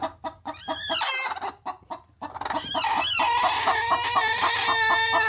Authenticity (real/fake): real